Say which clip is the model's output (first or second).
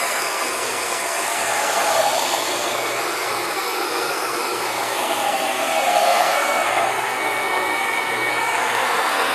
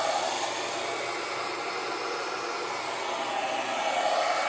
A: first